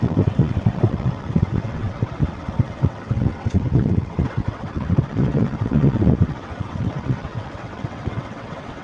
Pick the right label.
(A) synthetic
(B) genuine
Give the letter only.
A